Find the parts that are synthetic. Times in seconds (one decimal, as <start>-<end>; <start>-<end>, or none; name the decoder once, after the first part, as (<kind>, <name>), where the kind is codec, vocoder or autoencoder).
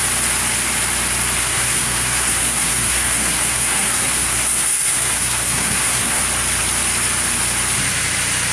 1.4-6.2 (codec, SNAC)